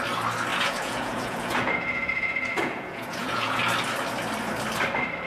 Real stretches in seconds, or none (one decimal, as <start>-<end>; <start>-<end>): 0.0-0.5; 3.6-5.3